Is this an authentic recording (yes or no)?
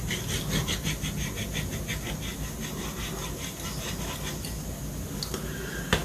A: yes